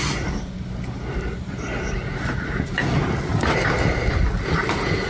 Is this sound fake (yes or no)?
no